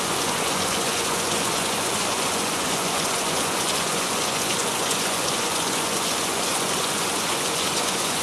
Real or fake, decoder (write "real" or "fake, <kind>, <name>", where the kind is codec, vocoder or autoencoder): fake, vocoder, Vocos